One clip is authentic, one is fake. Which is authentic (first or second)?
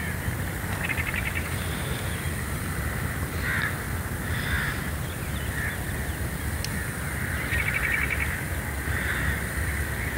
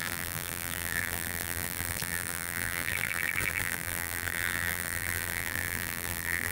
first